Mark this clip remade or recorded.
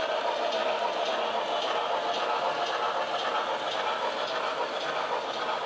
recorded